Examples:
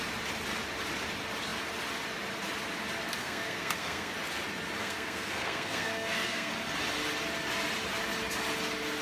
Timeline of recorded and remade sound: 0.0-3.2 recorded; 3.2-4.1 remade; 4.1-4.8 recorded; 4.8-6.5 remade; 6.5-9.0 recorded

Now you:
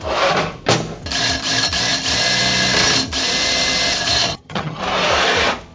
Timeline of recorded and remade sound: 0.0-4.3 recorded; 4.3-4.8 remade; 4.8-5.7 recorded

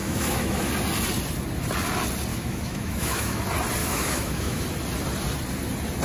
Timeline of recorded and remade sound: 0.0-0.7 remade; 0.7-2.3 recorded; 2.3-3.4 remade; 3.4-3.8 recorded; 3.8-4.6 remade; 4.6-6.0 recorded

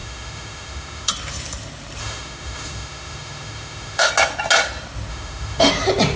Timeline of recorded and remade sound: 0.0-1.1 remade; 1.1-2.0 recorded; 2.0-4.1 remade; 4.1-5.1 recorded; 5.1-5.7 remade; 5.7-6.2 recorded

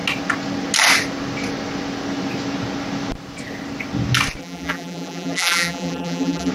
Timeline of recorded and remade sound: 0.0-4.4 recorded; 4.4-6.5 remade